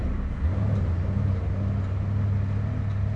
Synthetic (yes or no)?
no